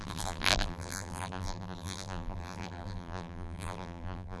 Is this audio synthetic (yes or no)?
yes